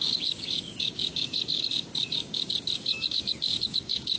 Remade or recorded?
remade